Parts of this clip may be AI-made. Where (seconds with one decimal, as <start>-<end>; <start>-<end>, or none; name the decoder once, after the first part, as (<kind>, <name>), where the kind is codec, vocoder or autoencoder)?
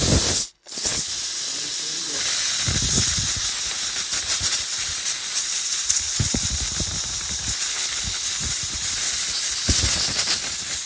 0.4-1.1 (codec, HILCodec); 7.7-8.3